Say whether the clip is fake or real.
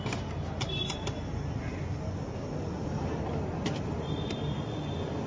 real